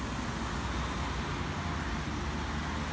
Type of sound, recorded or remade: recorded